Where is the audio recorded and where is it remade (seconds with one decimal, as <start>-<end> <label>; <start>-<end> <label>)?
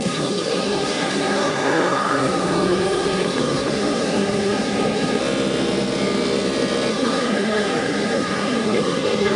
0.0-5.2 remade; 5.2-6.9 recorded; 6.9-9.4 remade